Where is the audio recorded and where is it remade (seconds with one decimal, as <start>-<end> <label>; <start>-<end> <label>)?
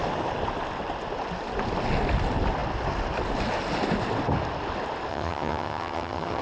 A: 0.0-5.1 recorded; 5.1-6.4 remade